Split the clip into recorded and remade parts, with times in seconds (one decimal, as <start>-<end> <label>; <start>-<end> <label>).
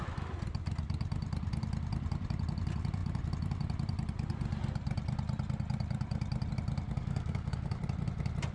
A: 0.0-7.0 recorded; 7.0-7.8 remade; 7.8-8.5 recorded